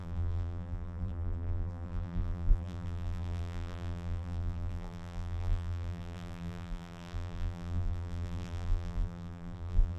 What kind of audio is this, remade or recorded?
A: remade